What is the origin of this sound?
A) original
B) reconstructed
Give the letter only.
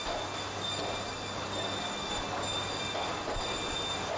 A